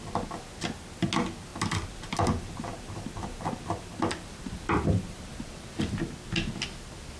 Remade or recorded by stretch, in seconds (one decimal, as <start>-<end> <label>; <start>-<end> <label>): 0.0-1.5 recorded; 1.5-5.8 remade; 5.8-7.2 recorded